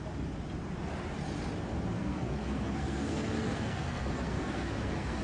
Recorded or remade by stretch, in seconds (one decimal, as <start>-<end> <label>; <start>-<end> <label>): 0.0-2.0 recorded; 2.0-5.2 remade